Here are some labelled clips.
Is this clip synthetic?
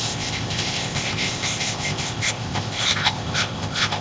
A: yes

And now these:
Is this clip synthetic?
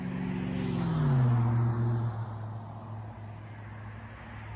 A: no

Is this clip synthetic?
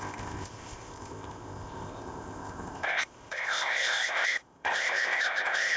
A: yes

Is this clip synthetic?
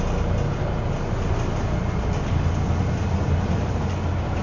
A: no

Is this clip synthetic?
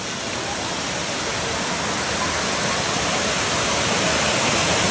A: no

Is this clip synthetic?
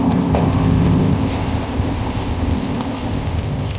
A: yes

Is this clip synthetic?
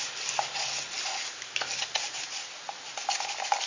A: no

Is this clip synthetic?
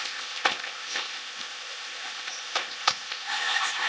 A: yes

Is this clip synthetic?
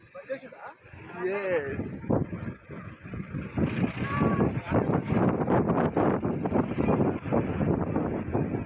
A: no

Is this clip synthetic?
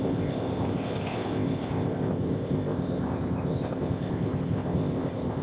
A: yes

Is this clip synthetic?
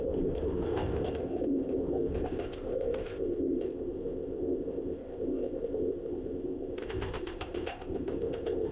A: yes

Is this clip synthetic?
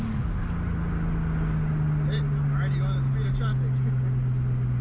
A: no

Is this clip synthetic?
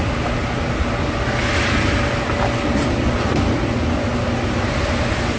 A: no